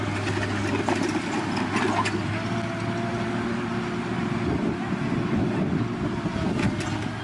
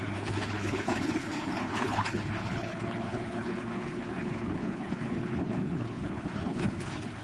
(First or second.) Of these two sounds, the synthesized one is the second